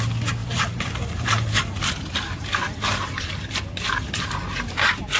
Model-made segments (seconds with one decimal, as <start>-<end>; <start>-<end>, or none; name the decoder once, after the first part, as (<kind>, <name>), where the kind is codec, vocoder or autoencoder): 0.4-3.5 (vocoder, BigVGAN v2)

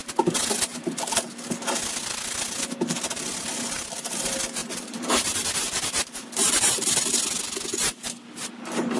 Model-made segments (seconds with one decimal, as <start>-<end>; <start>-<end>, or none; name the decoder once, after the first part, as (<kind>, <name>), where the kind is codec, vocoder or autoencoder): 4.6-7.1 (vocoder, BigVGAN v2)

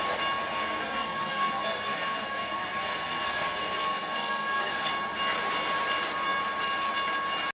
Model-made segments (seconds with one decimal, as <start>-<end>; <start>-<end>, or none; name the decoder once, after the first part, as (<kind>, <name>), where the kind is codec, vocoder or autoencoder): 0.5-4.9 (codec, SNAC)

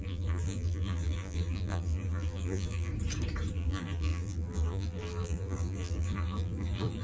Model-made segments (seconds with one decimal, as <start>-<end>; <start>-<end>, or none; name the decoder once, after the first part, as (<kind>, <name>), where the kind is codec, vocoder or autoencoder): 0.0-2.9 (vocoder, BigVGAN v2); 3.5-7.0

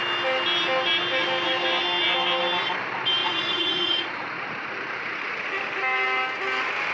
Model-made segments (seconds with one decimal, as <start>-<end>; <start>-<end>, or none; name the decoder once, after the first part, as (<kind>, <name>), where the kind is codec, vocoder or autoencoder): 3.2-5.5 (vocoder, Vocos)